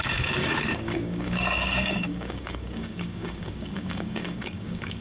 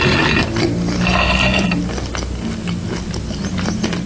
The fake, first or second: first